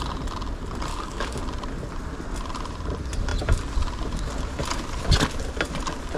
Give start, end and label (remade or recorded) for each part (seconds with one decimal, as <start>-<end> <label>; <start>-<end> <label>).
0.0-0.9 recorded; 0.9-1.4 remade; 1.4-6.2 recorded